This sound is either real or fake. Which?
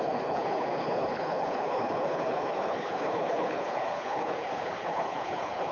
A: fake